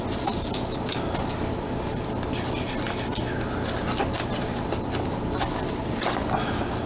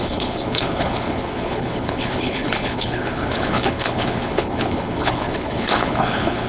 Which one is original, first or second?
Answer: first